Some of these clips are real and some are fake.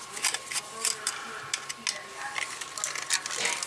real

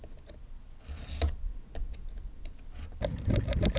real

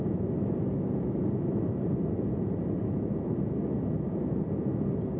real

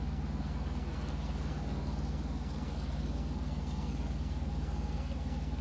fake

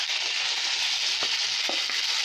real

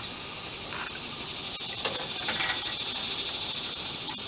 real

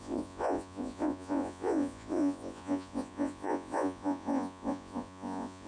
fake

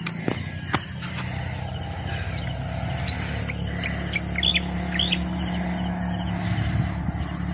real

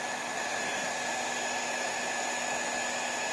real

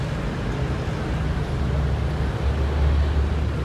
real